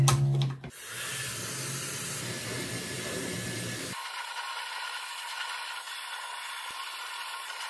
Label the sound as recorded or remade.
recorded